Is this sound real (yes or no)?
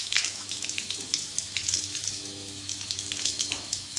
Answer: no